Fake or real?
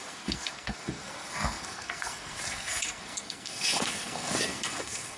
fake